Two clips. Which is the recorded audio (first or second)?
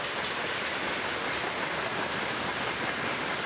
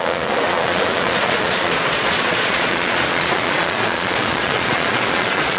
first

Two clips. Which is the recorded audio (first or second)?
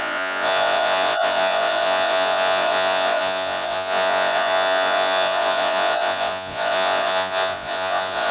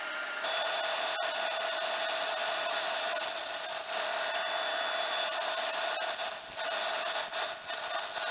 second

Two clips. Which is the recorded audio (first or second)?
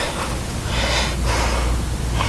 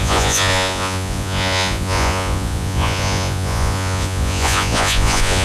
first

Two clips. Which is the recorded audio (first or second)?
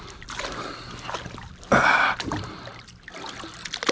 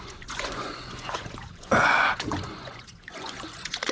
first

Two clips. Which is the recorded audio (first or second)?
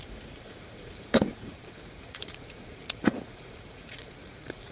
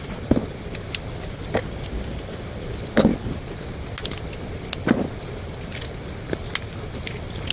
second